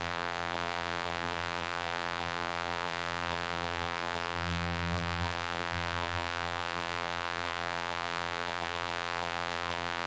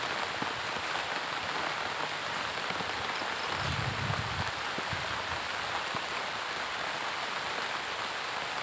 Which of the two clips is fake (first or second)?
first